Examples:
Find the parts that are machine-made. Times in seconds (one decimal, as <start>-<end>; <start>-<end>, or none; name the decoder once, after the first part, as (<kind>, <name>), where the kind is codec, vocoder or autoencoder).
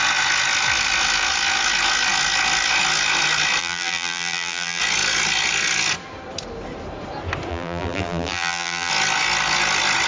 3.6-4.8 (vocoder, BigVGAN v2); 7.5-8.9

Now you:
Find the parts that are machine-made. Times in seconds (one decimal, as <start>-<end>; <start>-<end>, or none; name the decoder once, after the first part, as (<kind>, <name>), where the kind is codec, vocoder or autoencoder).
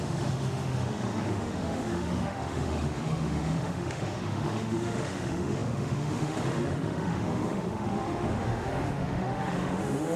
0.0-10.2 (autoencoder, DAC-VAE)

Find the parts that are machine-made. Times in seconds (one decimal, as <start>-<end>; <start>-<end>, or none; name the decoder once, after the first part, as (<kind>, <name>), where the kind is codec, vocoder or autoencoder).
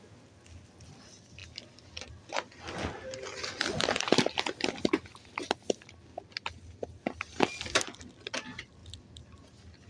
none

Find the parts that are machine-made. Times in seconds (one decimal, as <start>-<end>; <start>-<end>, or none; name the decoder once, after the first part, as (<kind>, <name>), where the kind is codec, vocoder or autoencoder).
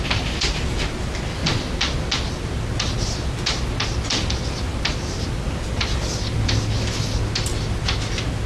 none